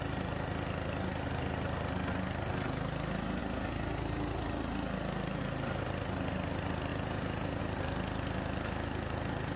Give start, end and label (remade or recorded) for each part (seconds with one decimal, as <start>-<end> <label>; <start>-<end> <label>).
0.0-6.9 recorded; 6.9-7.6 remade; 7.6-9.6 recorded